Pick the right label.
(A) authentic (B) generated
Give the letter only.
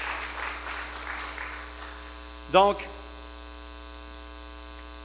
A